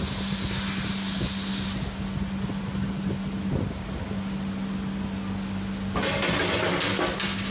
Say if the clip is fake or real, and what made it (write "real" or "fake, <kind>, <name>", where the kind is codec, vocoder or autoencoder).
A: real